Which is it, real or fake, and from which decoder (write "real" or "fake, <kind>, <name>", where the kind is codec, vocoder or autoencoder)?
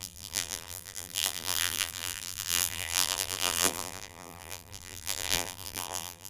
fake, vocoder, BigVGAN v2